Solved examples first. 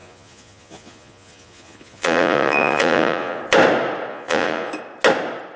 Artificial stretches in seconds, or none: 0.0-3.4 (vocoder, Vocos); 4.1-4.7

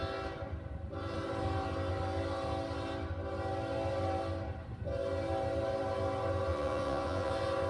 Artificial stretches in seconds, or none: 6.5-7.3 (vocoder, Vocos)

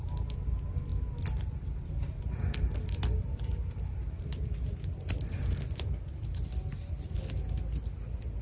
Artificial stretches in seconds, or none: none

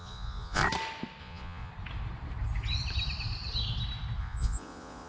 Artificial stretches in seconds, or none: 0.0-0.6 (vocoder, Vocos); 1.2-1.7; 4.2-5.1

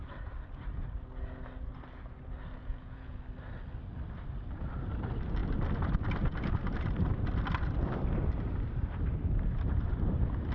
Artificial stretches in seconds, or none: 2.6-3.2 (vocoder, Vocos)

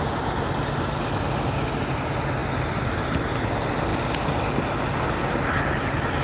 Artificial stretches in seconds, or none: none